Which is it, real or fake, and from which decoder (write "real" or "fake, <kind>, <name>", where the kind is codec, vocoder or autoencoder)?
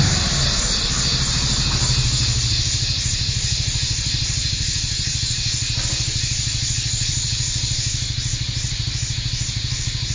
fake, vocoder, BigVGAN v2